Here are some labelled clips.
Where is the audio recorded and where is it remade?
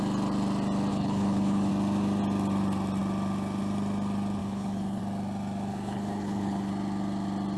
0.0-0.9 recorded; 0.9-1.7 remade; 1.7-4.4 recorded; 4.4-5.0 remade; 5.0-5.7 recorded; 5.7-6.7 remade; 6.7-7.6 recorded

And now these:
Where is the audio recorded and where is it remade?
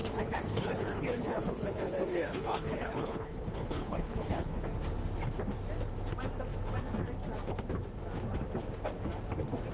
0.0-4.6 remade; 4.6-9.7 recorded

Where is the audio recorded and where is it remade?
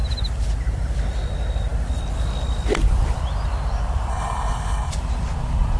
0.0-4.1 recorded; 4.1-4.9 remade; 4.9-5.8 recorded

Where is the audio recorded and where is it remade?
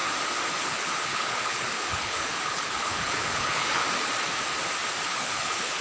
0.0-0.6 recorded; 0.6-3.8 remade; 3.8-5.0 recorded; 5.0-5.8 remade